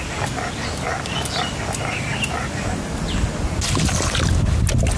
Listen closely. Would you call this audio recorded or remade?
recorded